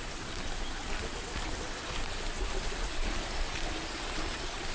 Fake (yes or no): no